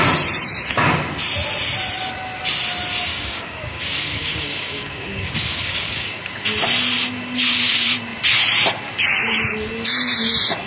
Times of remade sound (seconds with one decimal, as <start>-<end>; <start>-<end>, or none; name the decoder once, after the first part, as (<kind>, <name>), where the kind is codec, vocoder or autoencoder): 3.1-6.2 (codec, DAC)

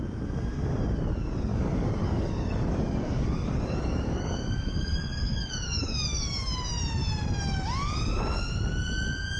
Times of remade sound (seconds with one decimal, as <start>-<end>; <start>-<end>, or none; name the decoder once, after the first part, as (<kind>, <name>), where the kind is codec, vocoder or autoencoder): 1.5-6.5 (codec, DAC)

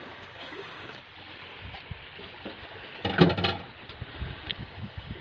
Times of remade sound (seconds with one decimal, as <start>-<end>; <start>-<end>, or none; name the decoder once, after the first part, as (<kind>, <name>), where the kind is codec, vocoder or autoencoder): 0.0-1.0 (codec, DAC); 4.1-5.2

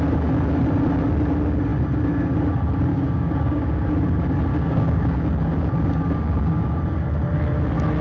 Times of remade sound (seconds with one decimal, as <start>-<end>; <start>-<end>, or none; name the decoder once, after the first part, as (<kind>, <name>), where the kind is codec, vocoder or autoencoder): 2.9-3.9 (codec, DAC); 4.5-6.8

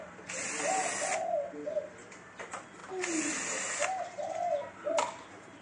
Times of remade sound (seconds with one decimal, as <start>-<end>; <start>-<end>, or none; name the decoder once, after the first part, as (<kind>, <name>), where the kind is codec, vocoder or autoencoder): none

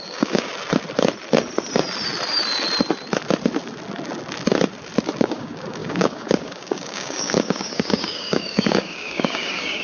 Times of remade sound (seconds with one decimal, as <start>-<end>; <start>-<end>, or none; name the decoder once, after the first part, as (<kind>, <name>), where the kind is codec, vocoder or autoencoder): 0.0-0.5 (codec, DAC); 5.2-9.8